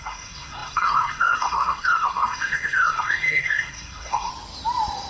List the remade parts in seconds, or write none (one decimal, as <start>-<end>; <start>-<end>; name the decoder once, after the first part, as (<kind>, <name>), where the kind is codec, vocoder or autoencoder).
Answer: 0.0-4.3 (codec, SNAC)